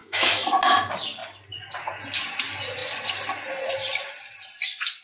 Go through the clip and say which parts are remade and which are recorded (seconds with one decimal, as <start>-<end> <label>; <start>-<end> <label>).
0.0-0.6 remade; 0.6-5.0 recorded